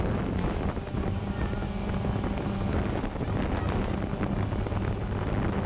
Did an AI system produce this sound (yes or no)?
no